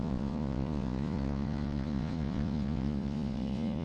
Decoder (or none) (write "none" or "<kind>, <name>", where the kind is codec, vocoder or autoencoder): vocoder, Vocos